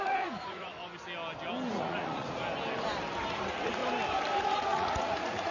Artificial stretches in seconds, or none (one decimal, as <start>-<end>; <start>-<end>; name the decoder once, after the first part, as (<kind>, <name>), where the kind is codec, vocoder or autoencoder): 0.0-0.7 (vocoder, Vocos); 1.7-2.4; 3.3-3.8; 4.4-5.5